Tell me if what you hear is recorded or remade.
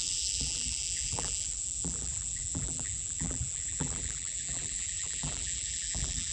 remade